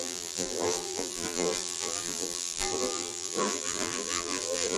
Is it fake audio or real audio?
fake